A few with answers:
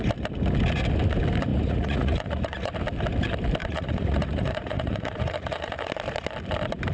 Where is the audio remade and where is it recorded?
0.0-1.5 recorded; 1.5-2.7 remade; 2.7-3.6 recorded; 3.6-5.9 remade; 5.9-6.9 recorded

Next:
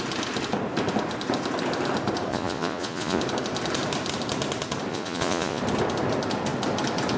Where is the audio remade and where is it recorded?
0.0-2.3 recorded; 2.3-3.2 remade; 3.2-4.9 recorded; 4.9-5.6 remade; 5.6-7.2 recorded

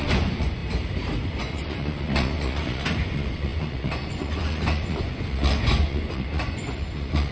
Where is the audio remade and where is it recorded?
0.0-0.6 remade; 0.6-1.4 recorded; 1.4-7.3 remade

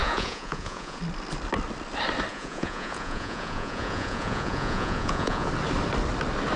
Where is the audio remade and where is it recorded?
0.0-1.0 remade; 1.0-2.3 recorded; 2.3-5.5 remade; 5.5-6.6 recorded